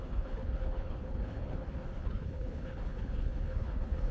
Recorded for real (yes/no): no